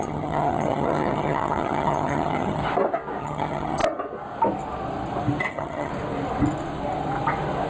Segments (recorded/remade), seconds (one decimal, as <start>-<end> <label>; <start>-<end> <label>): 0.0-2.6 remade; 2.6-3.2 recorded; 3.2-3.8 remade; 3.8-5.5 recorded; 5.5-5.9 remade; 5.9-7.7 recorded